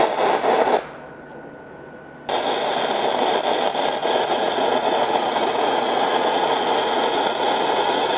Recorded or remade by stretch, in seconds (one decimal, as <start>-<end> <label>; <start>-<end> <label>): 0.0-4.0 recorded; 4.0-8.2 remade